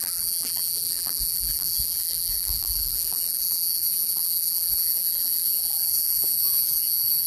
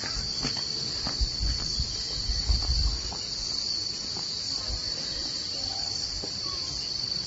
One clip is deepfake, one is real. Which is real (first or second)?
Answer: second